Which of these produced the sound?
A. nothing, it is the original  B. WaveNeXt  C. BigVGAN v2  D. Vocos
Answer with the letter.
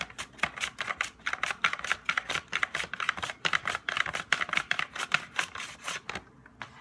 A